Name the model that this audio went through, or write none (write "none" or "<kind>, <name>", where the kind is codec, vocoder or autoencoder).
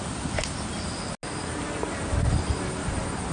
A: none